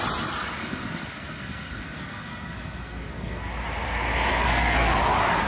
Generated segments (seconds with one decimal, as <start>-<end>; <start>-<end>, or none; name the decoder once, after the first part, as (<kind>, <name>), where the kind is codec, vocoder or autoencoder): 0.6-3.5 (codec, SNAC); 4.3-5.0